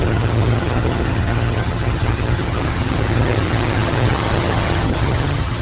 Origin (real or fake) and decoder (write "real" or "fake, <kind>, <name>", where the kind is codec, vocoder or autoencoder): fake, vocoder, HiFi-GAN